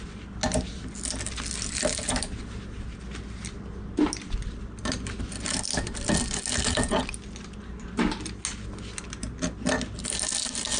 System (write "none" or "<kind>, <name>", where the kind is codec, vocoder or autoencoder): none